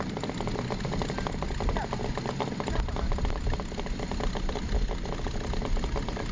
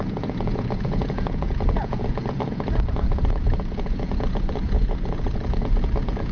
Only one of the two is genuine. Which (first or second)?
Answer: first